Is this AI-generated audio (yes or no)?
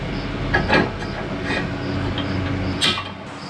no